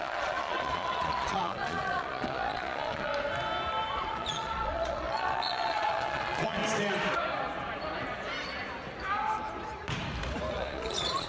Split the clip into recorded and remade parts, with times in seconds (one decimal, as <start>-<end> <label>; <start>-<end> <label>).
0.0-3.1 remade; 3.1-3.9 recorded; 3.9-6.6 remade; 6.6-10.5 recorded; 10.5-11.3 remade